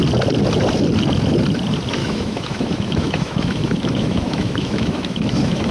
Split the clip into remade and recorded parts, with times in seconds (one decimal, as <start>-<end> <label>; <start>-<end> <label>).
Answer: 0.0-2.0 recorded; 2.0-5.7 remade